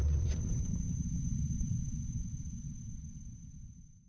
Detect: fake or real fake